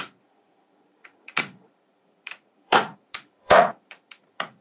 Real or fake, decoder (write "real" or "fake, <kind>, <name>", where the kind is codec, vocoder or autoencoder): fake, vocoder, Vocos